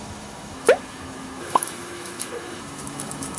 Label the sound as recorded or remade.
remade